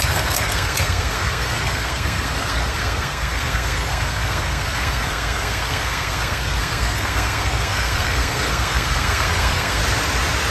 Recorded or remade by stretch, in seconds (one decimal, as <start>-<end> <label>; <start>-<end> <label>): 0.0-9.8 remade; 9.8-10.5 recorded